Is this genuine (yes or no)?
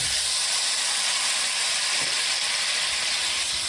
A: yes